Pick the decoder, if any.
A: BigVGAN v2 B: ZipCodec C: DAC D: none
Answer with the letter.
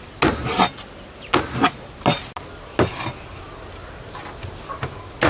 D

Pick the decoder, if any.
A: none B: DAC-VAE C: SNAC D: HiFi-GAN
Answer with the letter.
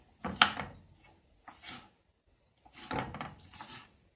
A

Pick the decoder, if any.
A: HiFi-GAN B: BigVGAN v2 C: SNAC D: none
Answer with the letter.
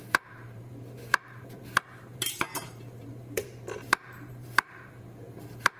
B